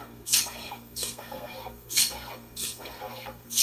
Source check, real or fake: fake